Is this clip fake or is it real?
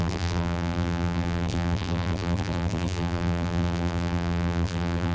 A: fake